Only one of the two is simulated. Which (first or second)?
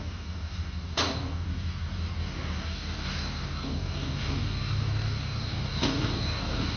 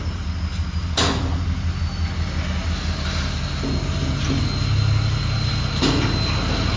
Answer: first